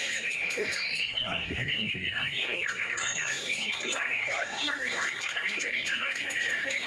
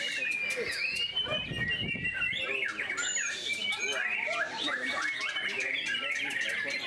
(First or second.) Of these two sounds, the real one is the second